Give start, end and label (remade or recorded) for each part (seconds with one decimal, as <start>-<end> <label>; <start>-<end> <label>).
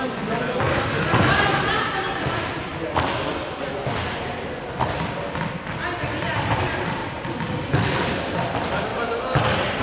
0.0-2.7 remade; 2.7-6.5 recorded; 6.5-8.9 remade; 8.9-9.8 recorded